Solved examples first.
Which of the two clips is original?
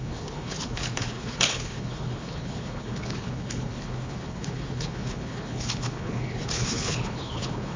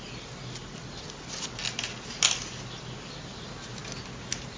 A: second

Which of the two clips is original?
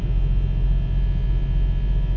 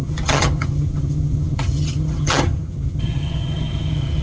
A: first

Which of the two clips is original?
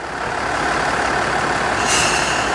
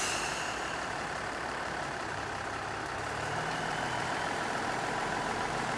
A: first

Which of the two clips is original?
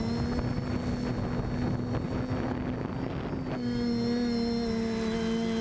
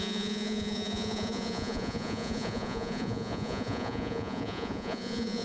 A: first